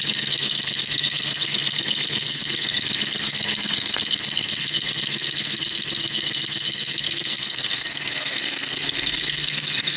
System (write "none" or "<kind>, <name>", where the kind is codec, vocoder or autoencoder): codec, SNAC